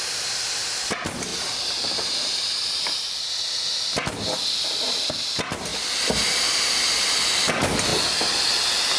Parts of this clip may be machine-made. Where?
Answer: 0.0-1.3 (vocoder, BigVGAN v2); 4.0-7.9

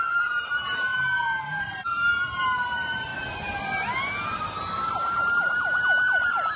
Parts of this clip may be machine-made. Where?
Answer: 0.0-0.9 (vocoder, BigVGAN v2); 1.6-3.1; 5.2-6.6

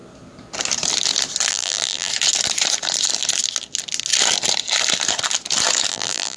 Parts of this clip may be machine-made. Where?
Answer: 1.5-2.1 (vocoder, BigVGAN v2); 5.9-6.4

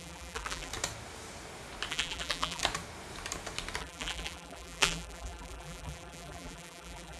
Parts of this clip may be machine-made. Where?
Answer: 0.0-0.7 (vocoder, BigVGAN v2); 1.9-2.6; 3.8-7.2